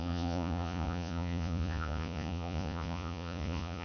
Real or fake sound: fake